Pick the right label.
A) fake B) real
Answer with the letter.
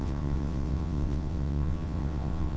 A